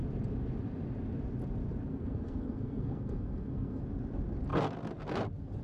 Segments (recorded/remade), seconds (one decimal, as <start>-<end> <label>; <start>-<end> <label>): 0.0-1.9 recorded; 1.9-3.8 remade; 3.8-5.6 recorded